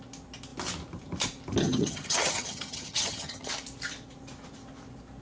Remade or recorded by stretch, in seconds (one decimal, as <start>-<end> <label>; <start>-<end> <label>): 0.0-1.6 recorded; 1.6-3.5 remade; 3.5-5.2 recorded